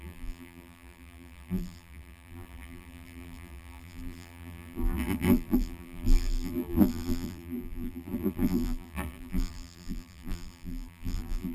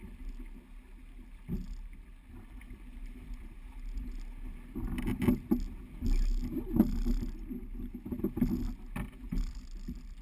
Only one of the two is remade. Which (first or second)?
first